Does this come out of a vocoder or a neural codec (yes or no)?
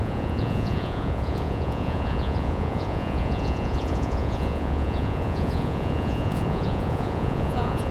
yes